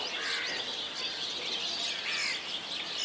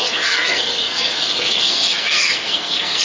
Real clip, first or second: first